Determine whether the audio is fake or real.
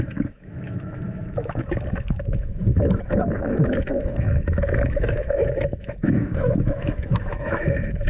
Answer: fake